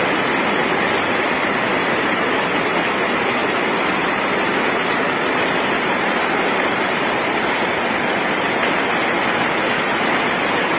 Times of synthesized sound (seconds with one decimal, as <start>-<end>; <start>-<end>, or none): 1.7-2.4; 4.0-8.5